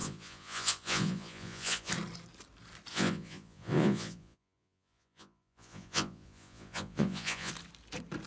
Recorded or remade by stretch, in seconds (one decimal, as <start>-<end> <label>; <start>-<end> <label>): 0.0-1.9 remade; 1.9-2.9 recorded; 2.9-7.5 remade; 7.5-8.3 recorded